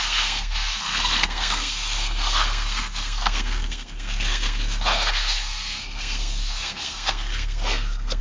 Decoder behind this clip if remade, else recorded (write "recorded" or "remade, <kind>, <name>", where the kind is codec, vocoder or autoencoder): remade, codec, SNAC